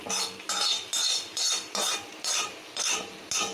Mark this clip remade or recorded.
recorded